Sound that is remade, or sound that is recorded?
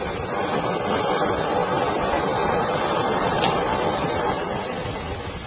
recorded